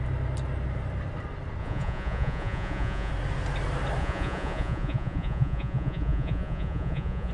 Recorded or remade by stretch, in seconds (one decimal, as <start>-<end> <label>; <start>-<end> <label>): 0.0-1.6 recorded; 1.6-3.1 remade; 3.1-4.0 recorded; 4.0-7.3 remade